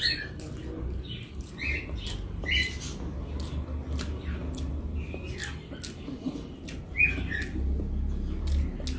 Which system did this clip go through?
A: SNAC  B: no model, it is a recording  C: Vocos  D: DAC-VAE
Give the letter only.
B